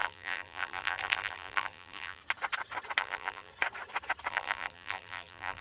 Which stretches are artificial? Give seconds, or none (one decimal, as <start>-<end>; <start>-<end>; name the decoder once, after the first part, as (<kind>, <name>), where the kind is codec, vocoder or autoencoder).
0.0-2.2 (vocoder, BigVGAN v2); 3.0-3.5; 4.3-5.6